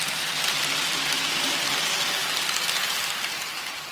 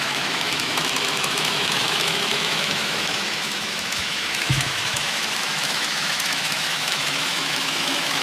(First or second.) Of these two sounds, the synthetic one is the second